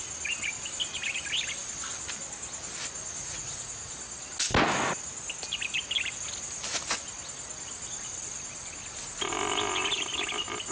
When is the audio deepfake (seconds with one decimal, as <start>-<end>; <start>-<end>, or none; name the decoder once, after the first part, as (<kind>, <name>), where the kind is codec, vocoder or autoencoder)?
3.2-3.9 (vocoder, Vocos)